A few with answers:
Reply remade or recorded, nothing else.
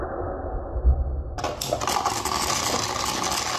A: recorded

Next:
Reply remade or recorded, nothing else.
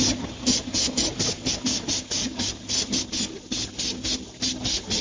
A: recorded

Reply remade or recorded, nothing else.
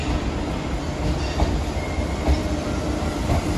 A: remade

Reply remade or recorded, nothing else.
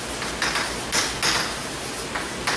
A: recorded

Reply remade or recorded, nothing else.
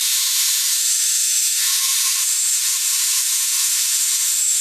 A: remade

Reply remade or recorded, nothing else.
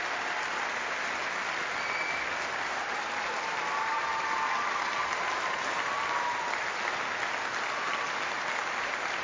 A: recorded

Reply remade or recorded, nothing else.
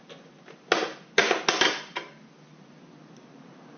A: recorded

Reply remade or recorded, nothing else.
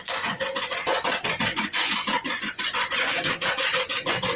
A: remade